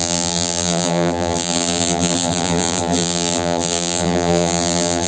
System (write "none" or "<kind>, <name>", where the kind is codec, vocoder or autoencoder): vocoder, BigVGAN v2